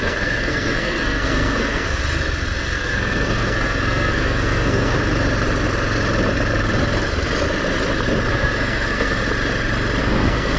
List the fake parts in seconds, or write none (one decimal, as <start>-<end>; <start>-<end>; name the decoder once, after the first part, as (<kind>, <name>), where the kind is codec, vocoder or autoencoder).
0.0-2.0 (codec, SNAC); 2.6-4.9; 8.3-9.2; 10.0-10.6